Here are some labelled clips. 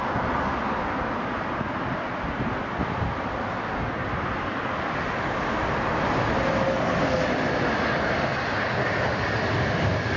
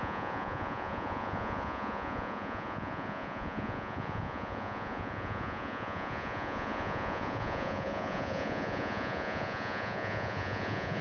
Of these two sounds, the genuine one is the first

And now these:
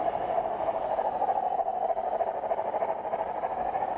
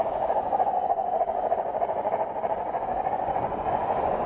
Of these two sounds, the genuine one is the first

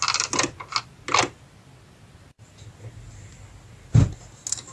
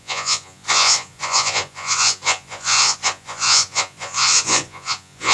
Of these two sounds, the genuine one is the first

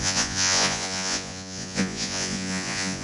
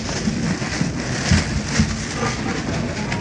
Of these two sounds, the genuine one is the second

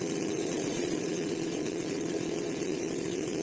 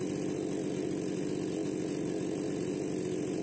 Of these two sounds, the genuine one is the second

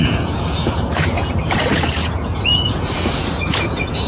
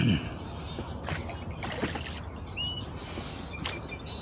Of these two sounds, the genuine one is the second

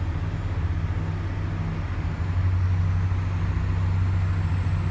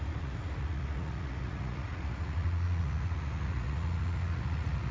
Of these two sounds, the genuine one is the first